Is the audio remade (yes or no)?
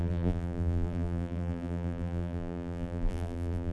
yes